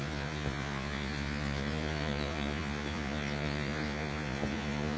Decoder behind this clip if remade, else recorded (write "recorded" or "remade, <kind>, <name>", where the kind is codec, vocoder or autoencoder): remade, vocoder, Vocos